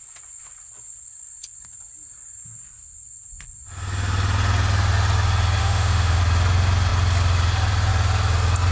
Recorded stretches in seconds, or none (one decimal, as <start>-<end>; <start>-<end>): 0.0-5.6; 6.2-8.7